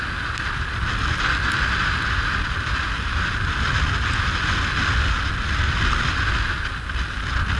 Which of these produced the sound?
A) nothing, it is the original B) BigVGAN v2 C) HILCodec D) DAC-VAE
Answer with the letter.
A